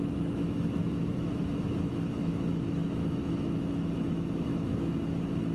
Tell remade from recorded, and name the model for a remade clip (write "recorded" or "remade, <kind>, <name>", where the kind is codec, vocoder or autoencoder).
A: remade, autoencoder, DAC-VAE